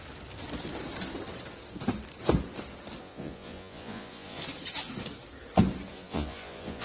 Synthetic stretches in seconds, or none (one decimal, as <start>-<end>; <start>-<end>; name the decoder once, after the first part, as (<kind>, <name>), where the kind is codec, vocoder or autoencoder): 3.0-4.4 (vocoder, Vocos); 5.9-6.8